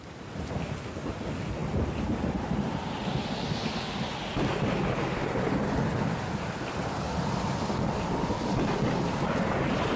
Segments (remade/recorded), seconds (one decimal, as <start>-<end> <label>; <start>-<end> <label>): 0.0-10.0 recorded